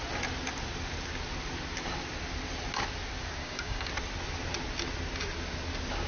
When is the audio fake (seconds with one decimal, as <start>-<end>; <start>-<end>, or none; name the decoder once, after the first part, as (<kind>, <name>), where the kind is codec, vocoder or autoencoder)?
3.4-3.9 (codec, DAC)